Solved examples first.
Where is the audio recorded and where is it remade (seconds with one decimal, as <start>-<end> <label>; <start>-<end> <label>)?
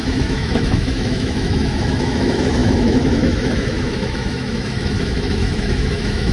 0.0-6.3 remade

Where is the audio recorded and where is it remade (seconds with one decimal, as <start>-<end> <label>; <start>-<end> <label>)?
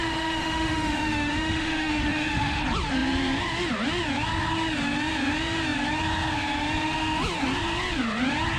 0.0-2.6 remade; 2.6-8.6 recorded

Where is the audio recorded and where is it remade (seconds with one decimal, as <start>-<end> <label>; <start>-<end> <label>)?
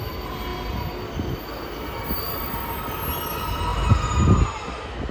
0.0-5.1 recorded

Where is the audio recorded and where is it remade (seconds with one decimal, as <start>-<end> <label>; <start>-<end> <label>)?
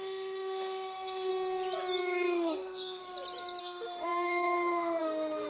0.0-1.3 remade; 1.3-2.0 recorded; 2.0-3.0 remade; 3.0-3.6 recorded; 3.6-5.5 remade